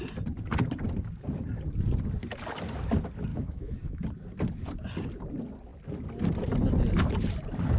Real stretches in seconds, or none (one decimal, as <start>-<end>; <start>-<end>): 0.0-3.3; 4.0-7.8

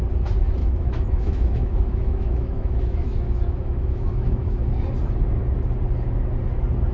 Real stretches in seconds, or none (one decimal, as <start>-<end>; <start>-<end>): 0.0-0.6; 4.7-6.9

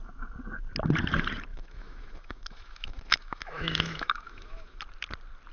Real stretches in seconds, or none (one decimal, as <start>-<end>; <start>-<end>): 0.0-1.5; 4.8-5.5

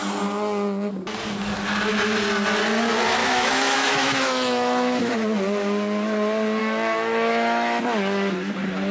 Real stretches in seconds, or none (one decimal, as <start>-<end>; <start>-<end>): 0.0-3.2; 5.1-6.6; 7.8-8.9

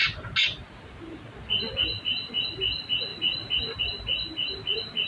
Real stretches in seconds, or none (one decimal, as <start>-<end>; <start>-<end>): 0.0-5.1

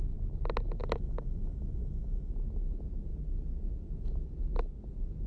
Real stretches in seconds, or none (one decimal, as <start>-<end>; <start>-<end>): 0.0-0.8; 2.3-5.3